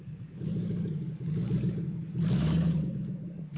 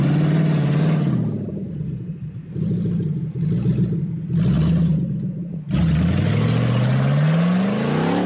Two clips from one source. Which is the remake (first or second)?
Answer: first